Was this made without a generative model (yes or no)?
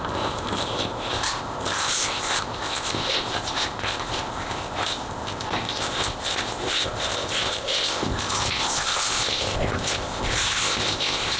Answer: no